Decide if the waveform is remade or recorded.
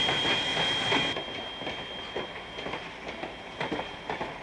recorded